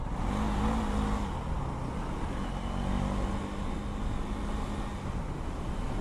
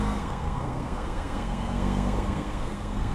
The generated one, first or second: second